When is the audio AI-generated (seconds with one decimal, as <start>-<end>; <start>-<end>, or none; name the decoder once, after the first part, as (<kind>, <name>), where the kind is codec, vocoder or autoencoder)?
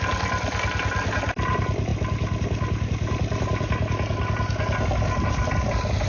none